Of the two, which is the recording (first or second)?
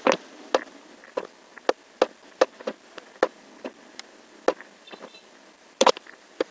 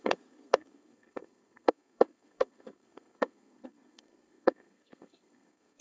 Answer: first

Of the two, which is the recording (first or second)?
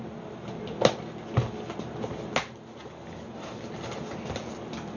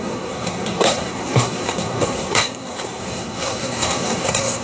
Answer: first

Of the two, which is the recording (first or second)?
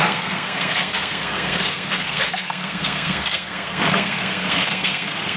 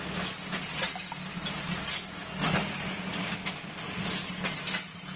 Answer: second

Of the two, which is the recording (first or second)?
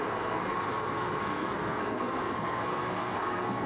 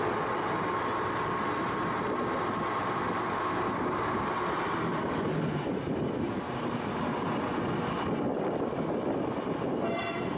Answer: second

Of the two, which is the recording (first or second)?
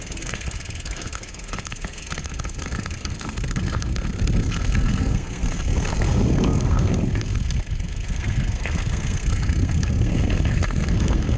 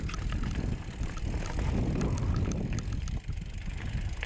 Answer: second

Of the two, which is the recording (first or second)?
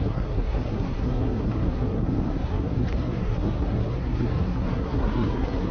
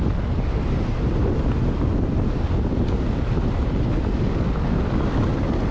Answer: second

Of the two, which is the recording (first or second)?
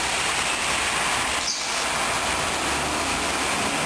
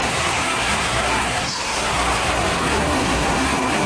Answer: first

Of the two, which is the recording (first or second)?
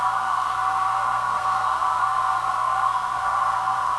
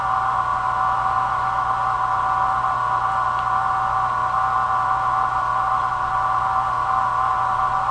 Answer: second